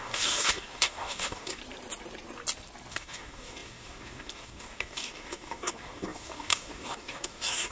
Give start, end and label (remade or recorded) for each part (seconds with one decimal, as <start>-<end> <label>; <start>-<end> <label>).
0.0-1.6 remade; 1.6-2.9 recorded; 2.9-7.7 remade